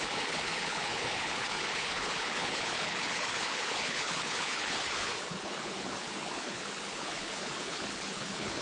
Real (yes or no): no